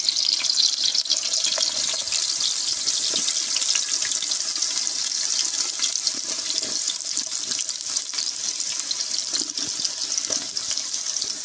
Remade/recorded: recorded